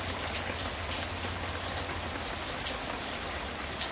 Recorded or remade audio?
recorded